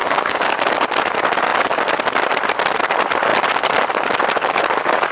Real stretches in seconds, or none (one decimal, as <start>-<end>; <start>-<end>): 0.6-5.1